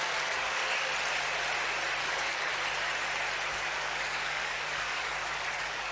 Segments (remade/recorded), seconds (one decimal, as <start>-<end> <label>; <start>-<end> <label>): 0.0-0.9 remade; 0.9-2.0 recorded; 2.0-2.5 remade; 2.5-3.5 recorded; 3.5-5.9 remade